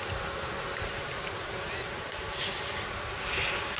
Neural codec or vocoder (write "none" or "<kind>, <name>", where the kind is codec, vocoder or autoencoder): none